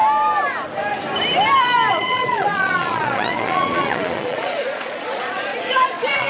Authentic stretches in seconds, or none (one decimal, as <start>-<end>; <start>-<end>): 0.0-1.9